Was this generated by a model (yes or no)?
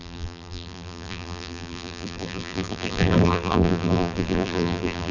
yes